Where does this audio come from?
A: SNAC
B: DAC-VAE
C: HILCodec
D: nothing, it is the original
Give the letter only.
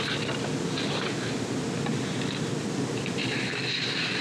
D